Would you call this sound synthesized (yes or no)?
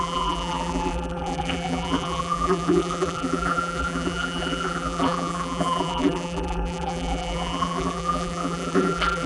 yes